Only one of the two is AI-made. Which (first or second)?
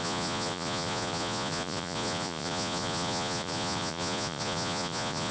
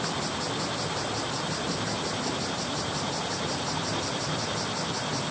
first